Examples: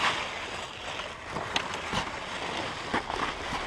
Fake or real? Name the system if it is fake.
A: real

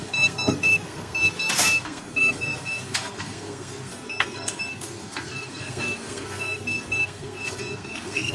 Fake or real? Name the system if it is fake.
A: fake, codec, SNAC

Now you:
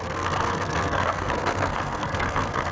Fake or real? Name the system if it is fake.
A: fake, codec, SNAC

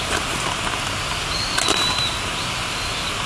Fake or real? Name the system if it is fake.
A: real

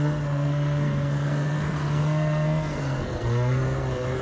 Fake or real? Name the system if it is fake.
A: fake, codec, SNAC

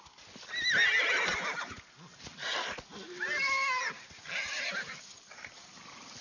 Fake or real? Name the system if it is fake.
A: real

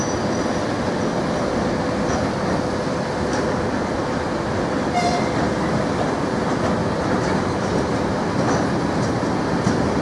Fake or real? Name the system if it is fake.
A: real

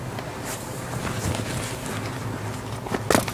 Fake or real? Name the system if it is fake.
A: real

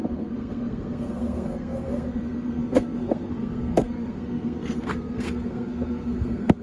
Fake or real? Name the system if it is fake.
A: fake, codec, SNAC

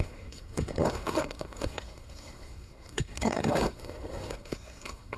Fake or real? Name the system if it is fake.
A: fake, codec, SNAC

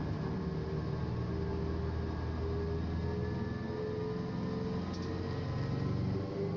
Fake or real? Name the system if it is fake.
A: real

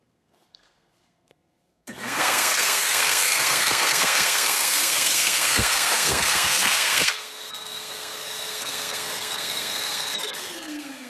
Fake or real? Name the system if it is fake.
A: fake, codec, SNAC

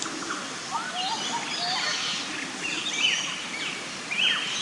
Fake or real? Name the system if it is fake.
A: real